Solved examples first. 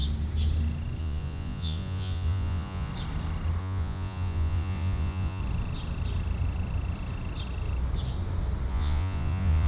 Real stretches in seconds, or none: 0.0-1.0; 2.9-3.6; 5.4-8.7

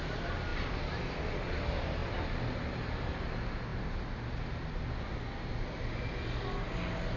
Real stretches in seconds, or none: 0.0-7.2

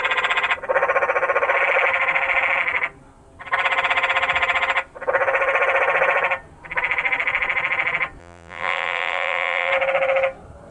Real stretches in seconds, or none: 0.0-8.2; 9.7-10.7

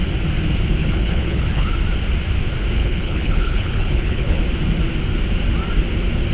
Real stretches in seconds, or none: 0.0-0.8; 1.7-2.8; 4.4-6.3

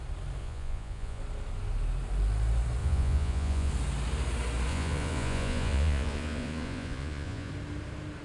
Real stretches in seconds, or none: 0.0-0.4; 1.2-2.8; 3.7-4.7; 7.5-8.2

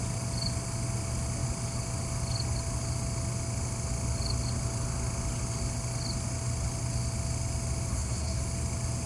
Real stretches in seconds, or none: 0.0-7.9; 8.4-9.1

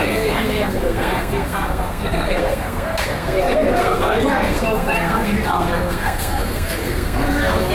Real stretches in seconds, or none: none